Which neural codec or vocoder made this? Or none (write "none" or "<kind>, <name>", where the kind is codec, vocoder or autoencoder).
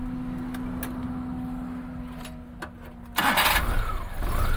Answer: none